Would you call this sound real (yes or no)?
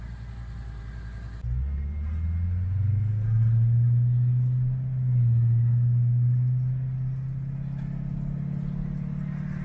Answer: yes